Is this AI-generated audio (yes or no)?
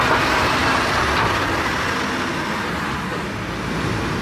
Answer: no